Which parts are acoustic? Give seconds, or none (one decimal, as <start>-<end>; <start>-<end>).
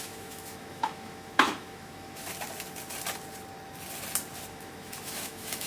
2.2-4.5